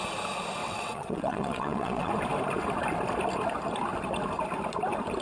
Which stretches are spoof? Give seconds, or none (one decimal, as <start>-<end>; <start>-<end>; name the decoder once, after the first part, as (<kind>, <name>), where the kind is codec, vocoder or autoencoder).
0.6-2.1 (vocoder, WaveNeXt)